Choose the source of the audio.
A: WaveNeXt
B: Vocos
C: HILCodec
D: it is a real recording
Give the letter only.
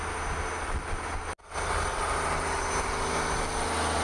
D